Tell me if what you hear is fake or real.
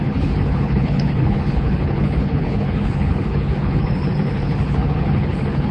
fake